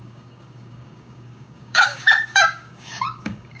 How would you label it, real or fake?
fake